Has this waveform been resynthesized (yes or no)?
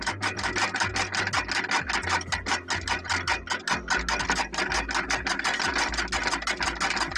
no